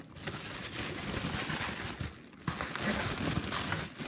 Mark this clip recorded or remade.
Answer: recorded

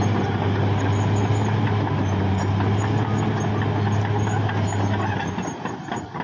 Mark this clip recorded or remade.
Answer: recorded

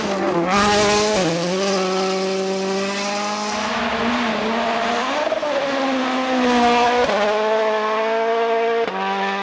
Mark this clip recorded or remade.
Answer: recorded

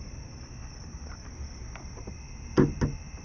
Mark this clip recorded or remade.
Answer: recorded